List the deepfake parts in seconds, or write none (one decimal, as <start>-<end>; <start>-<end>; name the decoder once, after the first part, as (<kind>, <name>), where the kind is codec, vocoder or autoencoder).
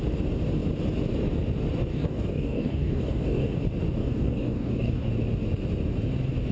1.9-3.6 (codec, DAC); 4.0-5.1